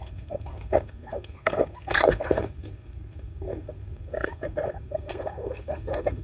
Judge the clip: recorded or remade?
remade